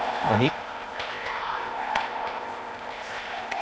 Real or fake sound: fake